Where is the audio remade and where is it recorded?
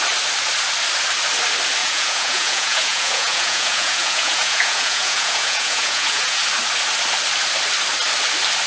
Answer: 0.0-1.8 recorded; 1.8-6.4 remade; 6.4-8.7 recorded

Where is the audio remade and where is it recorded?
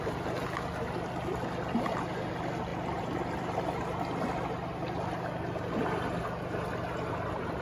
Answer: 0.0-7.6 recorded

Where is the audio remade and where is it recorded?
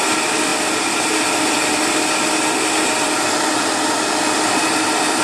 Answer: 0.0-5.2 recorded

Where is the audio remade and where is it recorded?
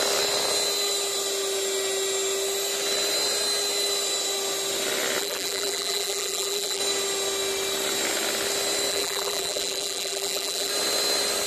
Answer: 0.0-5.2 recorded; 5.2-6.8 remade; 6.8-8.9 recorded; 8.9-10.7 remade; 10.7-11.5 recorded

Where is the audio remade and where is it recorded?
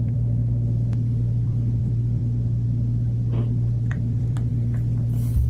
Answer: 0.0-2.2 remade; 2.2-3.8 recorded; 3.8-4.5 remade; 4.5-5.5 recorded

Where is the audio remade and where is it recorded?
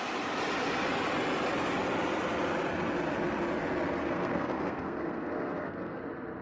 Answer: 0.0-4.0 recorded; 4.0-6.0 remade; 6.0-6.4 recorded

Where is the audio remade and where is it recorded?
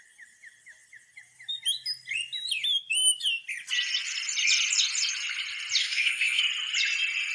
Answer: 0.0-5.8 recorded; 5.8-6.4 remade; 6.4-7.3 recorded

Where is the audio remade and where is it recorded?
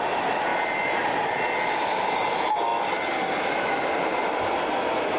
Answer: 0.0-5.2 recorded